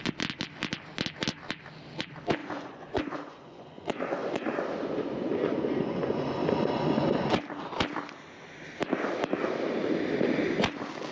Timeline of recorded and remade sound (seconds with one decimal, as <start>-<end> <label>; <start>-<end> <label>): 0.0-2.4 recorded; 2.4-7.3 remade; 7.3-11.1 recorded